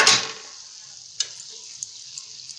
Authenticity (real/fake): real